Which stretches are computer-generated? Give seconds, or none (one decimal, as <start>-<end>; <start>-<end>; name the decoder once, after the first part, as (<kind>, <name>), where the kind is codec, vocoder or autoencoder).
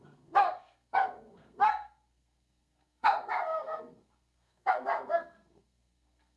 0.0-6.4 (codec, SNAC)